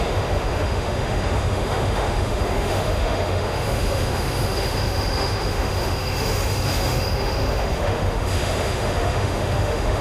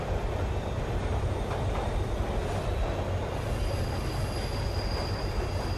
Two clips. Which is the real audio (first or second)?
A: second